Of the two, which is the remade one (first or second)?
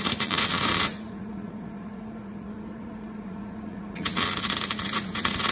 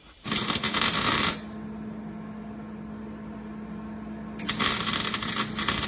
first